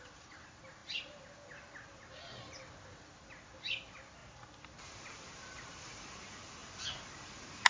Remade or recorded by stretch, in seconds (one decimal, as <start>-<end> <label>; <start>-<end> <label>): 0.0-7.7 recorded